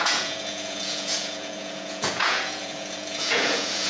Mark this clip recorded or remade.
remade